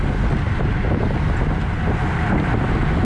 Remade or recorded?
recorded